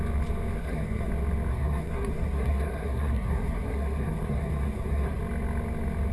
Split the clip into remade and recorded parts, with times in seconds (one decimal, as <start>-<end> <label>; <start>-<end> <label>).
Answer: 0.0-0.6 recorded; 0.6-1.1 remade; 1.1-1.5 recorded; 1.5-5.2 remade; 5.2-6.1 recorded

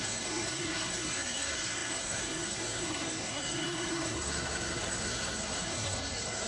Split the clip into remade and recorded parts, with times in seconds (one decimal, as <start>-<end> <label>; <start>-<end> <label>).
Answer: 0.0-6.5 remade

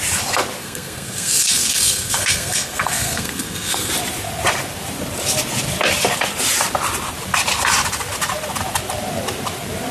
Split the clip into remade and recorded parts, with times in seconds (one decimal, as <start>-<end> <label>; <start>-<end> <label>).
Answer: 0.0-0.6 recorded; 0.6-3.9 remade; 3.9-9.9 recorded